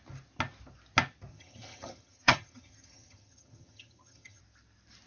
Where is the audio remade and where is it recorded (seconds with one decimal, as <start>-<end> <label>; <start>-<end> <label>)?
0.0-1.3 recorded; 1.3-4.4 remade; 4.4-5.1 recorded